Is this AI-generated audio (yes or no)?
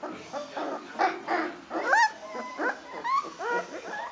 no